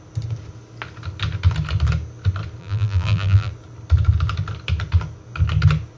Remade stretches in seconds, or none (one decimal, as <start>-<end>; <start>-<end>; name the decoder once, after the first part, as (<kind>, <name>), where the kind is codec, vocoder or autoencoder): 2.6-3.5 (vocoder, BigVGAN v2)